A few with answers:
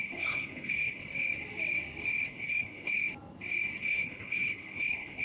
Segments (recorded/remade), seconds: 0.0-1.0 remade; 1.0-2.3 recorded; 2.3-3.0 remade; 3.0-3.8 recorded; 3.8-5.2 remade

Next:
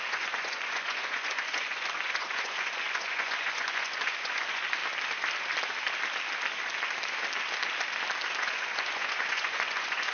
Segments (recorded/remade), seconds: 0.0-4.8 remade; 4.8-8.4 recorded; 8.4-10.1 remade

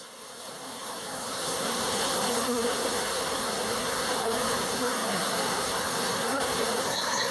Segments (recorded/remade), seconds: 0.0-7.3 remade

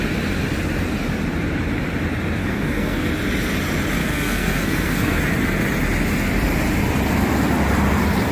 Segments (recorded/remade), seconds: 0.0-2.4 recorded; 2.4-3.1 remade; 3.1-4.0 recorded; 4.0-5.2 remade; 5.2-8.3 recorded